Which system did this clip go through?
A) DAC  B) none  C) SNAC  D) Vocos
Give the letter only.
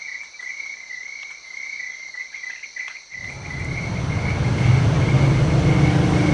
B